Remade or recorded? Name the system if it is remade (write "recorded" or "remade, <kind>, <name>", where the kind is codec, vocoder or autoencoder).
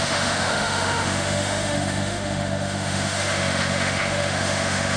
remade, autoencoder, DAC-VAE